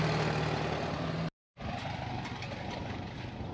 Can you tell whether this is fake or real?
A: real